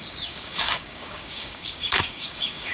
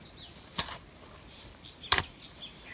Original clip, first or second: second